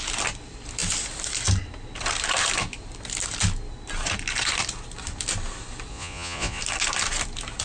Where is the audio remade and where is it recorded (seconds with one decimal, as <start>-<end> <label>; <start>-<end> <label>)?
0.0-5.9 recorded; 5.9-6.6 remade; 6.6-7.6 recorded